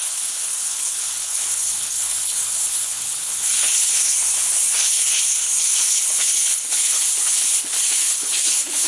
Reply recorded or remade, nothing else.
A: remade